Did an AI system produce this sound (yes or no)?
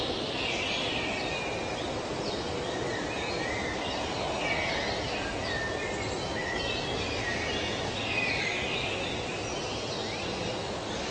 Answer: no